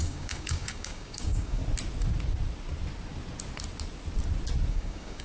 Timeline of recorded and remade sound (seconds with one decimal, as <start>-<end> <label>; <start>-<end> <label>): 0.0-1.6 remade; 1.6-4.7 recorded; 4.7-5.2 remade